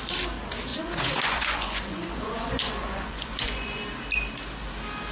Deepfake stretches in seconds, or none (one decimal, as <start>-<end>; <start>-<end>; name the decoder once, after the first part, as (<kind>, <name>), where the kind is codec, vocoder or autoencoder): 0.7-3.8 (vocoder, Vocos)